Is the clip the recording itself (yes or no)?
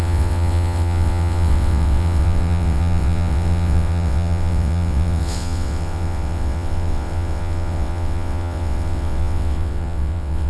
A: no